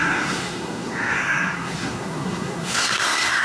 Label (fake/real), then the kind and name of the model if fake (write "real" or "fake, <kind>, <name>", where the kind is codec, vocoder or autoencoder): fake, codec, SNAC